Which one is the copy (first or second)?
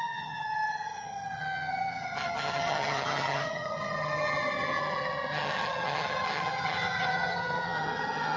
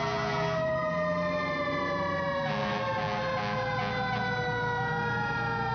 first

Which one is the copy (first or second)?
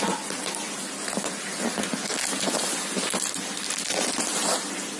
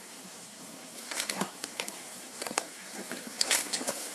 second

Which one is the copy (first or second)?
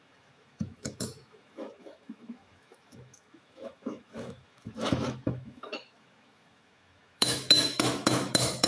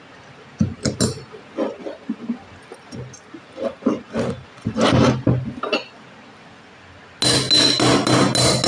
first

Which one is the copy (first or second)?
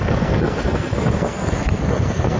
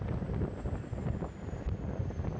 first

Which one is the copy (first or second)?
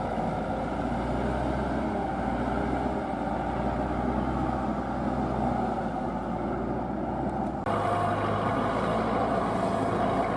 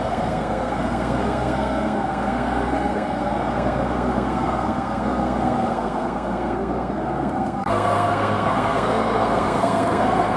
second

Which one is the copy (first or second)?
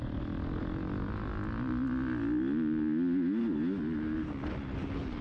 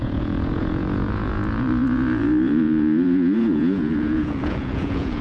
second